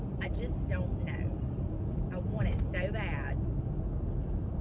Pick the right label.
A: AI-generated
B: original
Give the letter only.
A